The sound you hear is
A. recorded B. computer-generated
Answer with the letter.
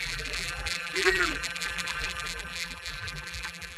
B